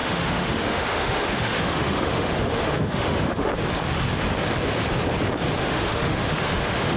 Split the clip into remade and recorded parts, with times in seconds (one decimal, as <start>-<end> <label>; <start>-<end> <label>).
0.0-3.5 remade; 3.5-5.6 recorded; 5.6-7.0 remade